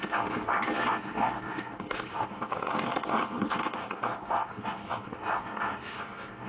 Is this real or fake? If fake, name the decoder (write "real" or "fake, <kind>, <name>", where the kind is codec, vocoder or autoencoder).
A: fake, codec, SNAC